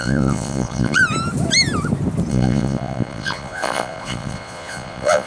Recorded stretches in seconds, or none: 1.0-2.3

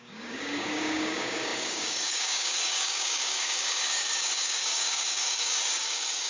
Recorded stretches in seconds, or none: none